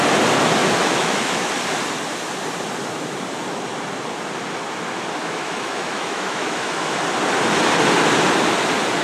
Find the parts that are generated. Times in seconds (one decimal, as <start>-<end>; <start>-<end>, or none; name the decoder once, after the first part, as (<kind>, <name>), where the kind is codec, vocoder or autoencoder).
0.6-1.5 (autoencoder, DAC-VAE); 5.2-7.0